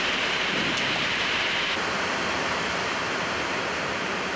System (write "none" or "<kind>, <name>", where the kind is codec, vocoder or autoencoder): vocoder, BigVGAN v2